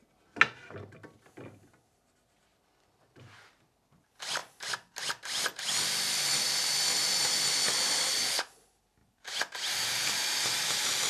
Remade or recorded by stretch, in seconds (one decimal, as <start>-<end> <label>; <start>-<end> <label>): 0.0-4.4 recorded; 4.4-8.0 remade; 8.0-11.1 recorded